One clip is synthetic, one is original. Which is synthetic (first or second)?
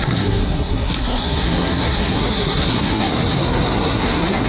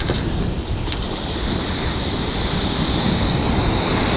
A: first